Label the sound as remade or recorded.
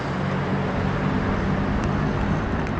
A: recorded